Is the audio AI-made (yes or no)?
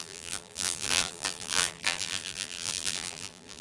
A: yes